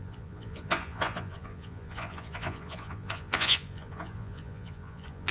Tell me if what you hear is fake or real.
fake